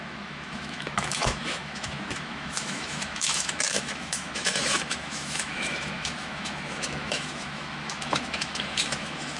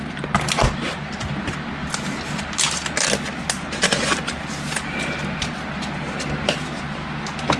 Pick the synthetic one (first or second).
first